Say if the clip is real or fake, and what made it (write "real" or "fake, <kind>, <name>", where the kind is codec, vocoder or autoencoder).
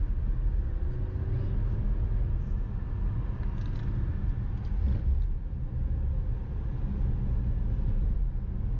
real